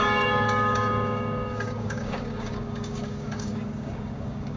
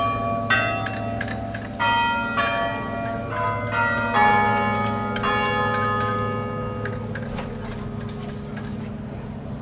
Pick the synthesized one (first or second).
first